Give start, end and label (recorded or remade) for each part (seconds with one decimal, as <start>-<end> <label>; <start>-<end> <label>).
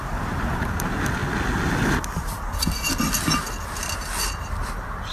0.0-1.2 remade; 1.2-4.3 recorded; 4.3-5.1 remade